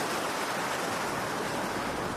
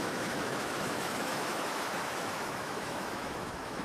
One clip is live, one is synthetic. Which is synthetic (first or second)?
second